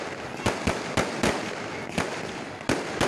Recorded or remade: recorded